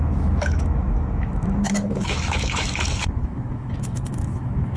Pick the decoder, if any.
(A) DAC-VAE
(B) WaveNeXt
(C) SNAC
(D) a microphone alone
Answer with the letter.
A